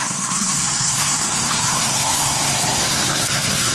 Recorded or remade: remade